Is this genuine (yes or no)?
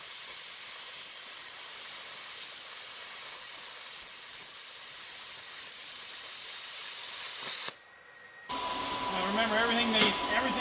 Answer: yes